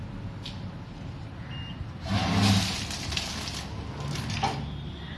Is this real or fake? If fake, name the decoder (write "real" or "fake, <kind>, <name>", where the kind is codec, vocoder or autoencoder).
real